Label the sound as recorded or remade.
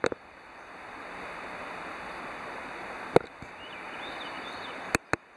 recorded